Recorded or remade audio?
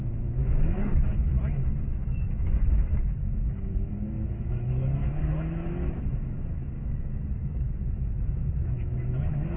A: remade